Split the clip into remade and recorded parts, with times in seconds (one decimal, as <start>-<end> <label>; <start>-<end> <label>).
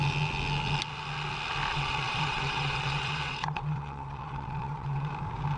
0.0-1.7 recorded; 1.7-5.1 remade; 5.1-5.6 recorded